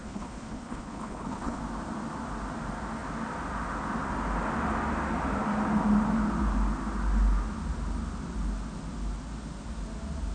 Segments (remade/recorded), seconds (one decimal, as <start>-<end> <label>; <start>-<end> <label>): 0.0-1.6 remade; 1.6-10.3 recorded